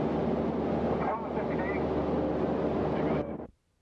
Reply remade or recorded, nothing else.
recorded